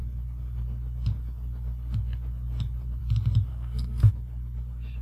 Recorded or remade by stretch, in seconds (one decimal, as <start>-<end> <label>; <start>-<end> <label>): 0.0-3.5 recorded; 3.5-4.1 remade; 4.1-5.0 recorded